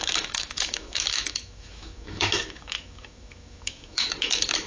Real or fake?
fake